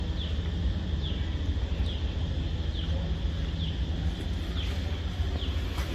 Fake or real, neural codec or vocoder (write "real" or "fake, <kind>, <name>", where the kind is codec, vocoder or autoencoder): real